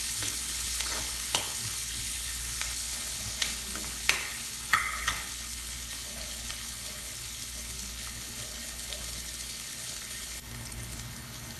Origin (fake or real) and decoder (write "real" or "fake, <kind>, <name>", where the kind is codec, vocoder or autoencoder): fake, codec, HILCodec